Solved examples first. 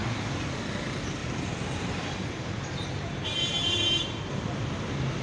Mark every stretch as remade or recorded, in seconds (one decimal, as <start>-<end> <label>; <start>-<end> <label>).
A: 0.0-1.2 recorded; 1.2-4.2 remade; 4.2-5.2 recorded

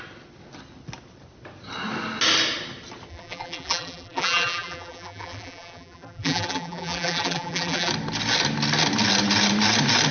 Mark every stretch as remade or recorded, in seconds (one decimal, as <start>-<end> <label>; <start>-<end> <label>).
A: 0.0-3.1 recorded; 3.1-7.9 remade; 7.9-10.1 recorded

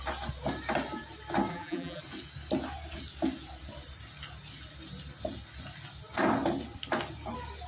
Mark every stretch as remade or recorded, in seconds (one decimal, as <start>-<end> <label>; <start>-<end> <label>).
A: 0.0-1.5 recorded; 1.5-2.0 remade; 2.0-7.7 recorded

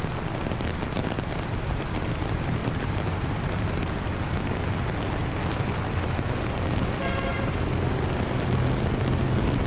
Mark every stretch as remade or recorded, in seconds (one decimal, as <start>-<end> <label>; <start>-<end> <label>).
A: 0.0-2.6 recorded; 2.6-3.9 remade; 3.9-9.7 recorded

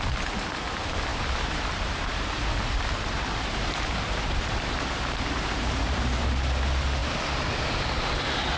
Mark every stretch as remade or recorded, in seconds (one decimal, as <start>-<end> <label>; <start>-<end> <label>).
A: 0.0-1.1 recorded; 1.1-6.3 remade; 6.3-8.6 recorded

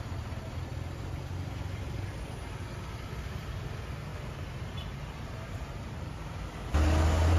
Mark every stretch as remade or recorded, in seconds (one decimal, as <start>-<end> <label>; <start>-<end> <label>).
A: 0.0-4.1 recorded; 4.1-6.5 remade; 6.5-7.4 recorded